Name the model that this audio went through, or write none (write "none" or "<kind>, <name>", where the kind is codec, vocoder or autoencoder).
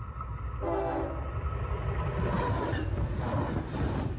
none